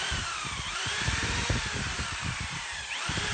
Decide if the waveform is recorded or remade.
remade